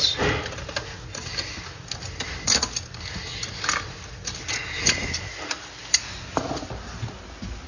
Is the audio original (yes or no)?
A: yes